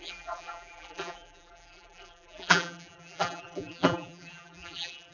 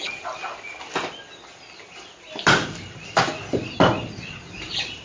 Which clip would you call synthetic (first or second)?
first